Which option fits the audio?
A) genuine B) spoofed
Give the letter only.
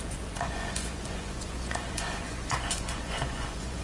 B